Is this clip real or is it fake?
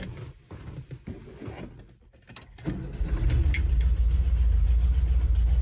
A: real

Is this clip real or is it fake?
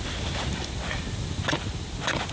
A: real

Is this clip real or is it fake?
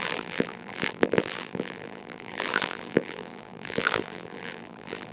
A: fake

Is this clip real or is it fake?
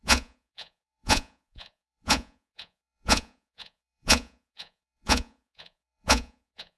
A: fake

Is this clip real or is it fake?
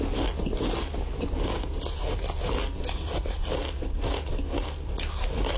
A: real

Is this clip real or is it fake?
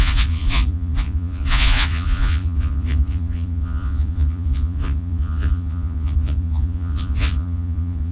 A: fake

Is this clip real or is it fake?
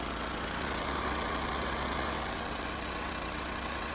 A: fake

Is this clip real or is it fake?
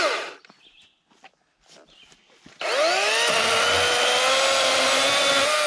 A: real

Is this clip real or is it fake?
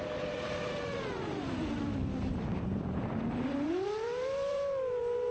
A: fake